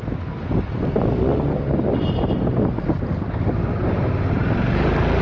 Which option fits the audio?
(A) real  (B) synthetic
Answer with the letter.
A